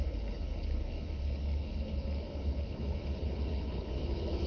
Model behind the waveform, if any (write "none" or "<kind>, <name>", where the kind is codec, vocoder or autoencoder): codec, HILCodec